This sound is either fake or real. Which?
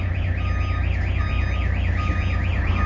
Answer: real